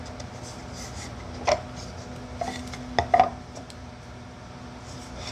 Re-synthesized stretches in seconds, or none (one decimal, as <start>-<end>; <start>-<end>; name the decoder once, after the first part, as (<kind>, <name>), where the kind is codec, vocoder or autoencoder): 3.3-5.3 (vocoder, BigVGAN v2)